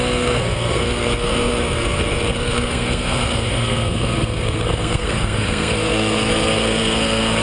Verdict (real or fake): fake